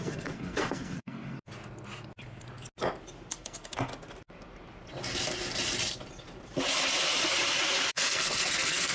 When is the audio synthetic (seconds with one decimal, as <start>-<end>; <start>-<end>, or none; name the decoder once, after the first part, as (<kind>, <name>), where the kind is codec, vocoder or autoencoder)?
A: 0.0-1.5 (codec, SNAC); 3.3-3.9; 7.9-8.9